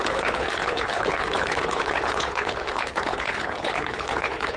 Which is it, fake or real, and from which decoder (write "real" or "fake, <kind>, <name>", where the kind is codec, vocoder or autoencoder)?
fake, codec, HILCodec